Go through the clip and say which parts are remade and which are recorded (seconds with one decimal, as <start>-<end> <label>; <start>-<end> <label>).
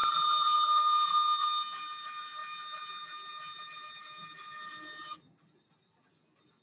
0.0-6.6 recorded